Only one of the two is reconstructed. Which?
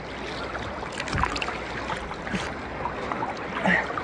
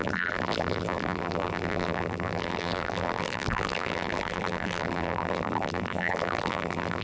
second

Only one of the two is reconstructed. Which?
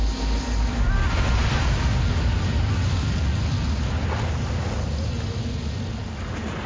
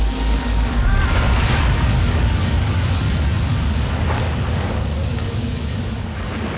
second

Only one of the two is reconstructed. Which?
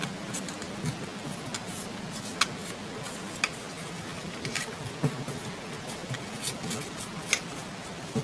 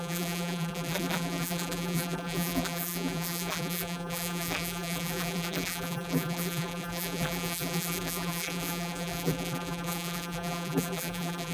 second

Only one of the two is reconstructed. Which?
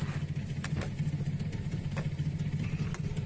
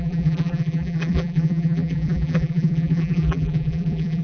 second